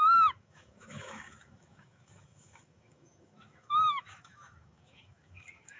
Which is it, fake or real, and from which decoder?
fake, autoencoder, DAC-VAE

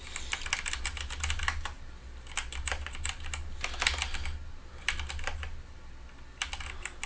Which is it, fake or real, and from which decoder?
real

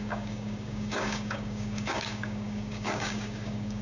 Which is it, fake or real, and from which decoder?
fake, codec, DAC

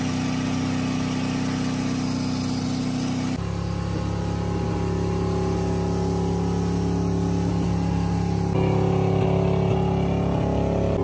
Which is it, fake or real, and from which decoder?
real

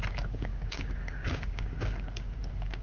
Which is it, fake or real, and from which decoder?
fake, codec, DAC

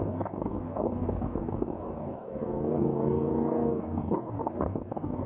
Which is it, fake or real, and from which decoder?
fake, codec, DAC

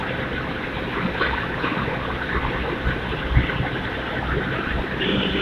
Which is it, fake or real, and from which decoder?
real